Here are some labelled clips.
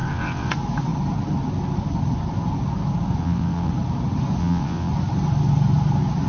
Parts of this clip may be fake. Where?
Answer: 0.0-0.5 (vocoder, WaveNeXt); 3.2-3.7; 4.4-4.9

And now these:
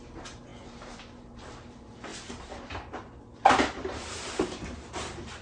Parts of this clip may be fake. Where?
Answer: 0.0-2.1 (vocoder, BigVGAN v2); 3.8-5.4

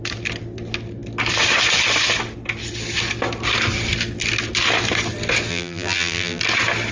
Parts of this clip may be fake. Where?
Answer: 5.5-6.4 (vocoder, BigVGAN v2)

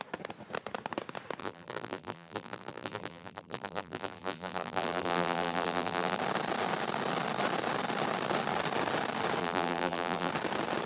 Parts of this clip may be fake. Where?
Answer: 1.4-6.2 (vocoder, BigVGAN v2); 9.4-10.3